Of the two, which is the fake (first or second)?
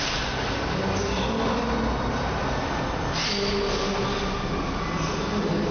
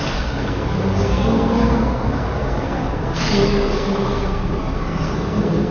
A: second